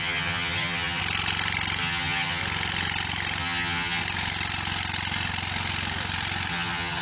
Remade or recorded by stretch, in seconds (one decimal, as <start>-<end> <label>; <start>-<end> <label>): 0.0-1.0 remade; 1.0-1.8 recorded; 1.8-2.4 remade; 2.4-3.4 recorded; 3.4-4.0 remade; 4.0-6.5 recorded; 6.5-7.0 remade